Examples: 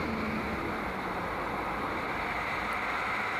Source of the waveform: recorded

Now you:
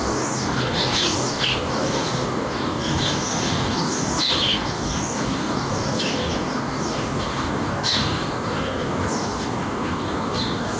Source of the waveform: remade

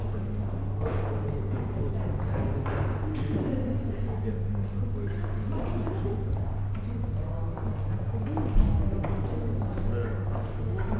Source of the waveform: recorded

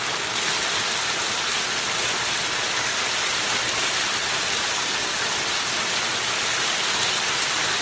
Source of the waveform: recorded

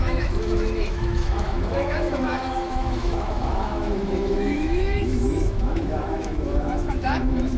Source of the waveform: remade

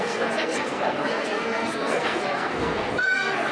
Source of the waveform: remade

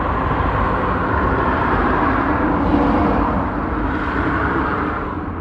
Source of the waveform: remade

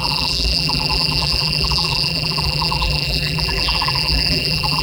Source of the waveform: remade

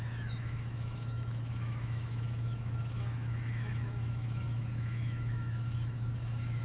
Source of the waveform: remade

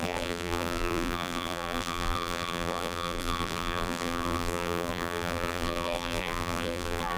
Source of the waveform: remade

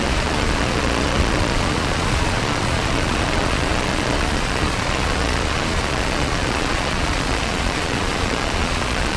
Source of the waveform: remade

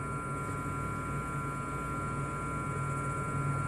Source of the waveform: recorded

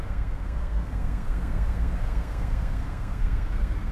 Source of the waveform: remade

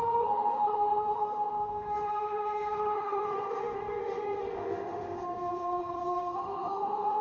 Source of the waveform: remade